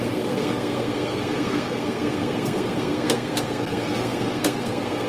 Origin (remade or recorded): remade